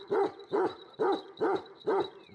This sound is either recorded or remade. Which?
remade